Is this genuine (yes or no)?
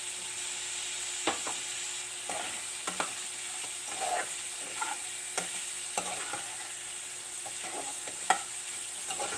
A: yes